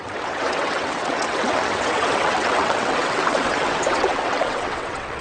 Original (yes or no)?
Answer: no